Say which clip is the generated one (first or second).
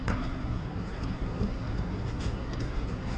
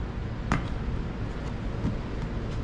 first